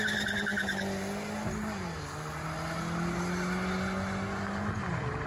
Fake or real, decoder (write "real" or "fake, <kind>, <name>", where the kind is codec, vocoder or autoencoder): real